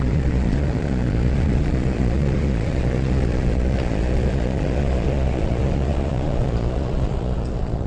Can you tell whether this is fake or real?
fake